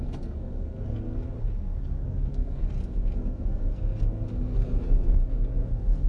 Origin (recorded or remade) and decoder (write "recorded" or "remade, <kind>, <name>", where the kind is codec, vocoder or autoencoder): remade, codec, SNAC